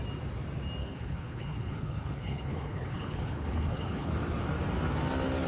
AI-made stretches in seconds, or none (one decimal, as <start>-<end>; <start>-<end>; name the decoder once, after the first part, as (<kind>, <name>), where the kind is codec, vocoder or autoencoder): 0.8-4.1 (codec, HILCodec)